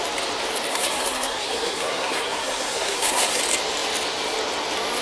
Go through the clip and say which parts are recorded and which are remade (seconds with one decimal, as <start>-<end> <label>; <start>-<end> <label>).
0.0-0.7 recorded; 0.7-3.4 remade; 3.4-5.0 recorded

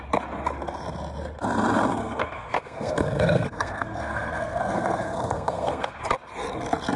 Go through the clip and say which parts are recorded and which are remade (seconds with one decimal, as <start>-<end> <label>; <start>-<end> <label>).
0.0-2.0 recorded; 2.0-6.0 remade; 6.0-7.0 recorded

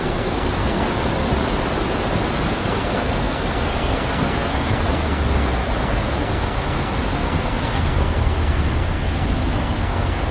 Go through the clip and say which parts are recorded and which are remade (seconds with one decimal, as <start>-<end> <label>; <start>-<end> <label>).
0.0-1.3 remade; 1.3-2.5 recorded; 2.5-10.3 remade

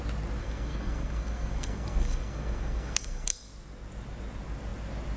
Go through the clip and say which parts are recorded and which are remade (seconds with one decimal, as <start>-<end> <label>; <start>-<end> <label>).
0.0-0.4 recorded; 0.4-3.5 remade; 3.5-5.2 recorded